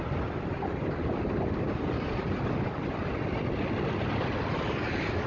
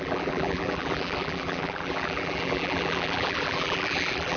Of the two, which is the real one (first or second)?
first